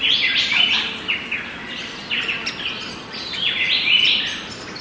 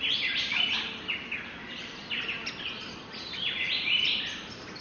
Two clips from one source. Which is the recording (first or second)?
first